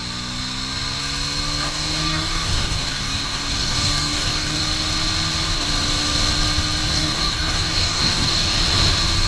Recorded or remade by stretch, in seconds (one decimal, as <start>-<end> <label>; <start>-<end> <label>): 0.0-1.6 recorded; 1.6-4.6 remade; 4.6-6.9 recorded; 6.9-8.6 remade; 8.6-9.3 recorded

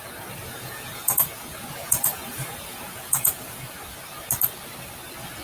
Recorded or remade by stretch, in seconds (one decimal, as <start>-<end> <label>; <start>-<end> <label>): 0.0-0.4 recorded; 0.4-3.6 remade; 3.6-5.4 recorded

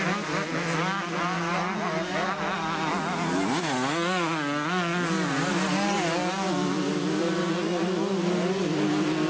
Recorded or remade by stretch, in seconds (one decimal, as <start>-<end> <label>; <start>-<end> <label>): 0.0-9.3 recorded

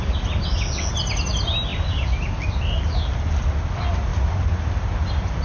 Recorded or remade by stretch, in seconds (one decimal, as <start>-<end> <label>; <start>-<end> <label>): 0.0-5.4 recorded

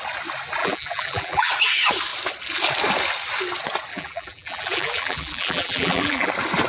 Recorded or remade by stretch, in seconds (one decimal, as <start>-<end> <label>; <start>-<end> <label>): 0.0-0.6 recorded; 0.6-1.5 remade; 1.5-3.9 recorded; 3.9-6.3 remade; 6.3-6.7 recorded

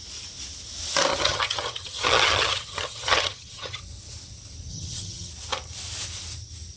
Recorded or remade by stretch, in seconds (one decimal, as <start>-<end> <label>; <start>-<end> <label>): 0.0-1.1 recorded; 1.1-3.8 remade; 3.8-4.7 recorded; 4.7-5.3 remade; 5.3-6.8 recorded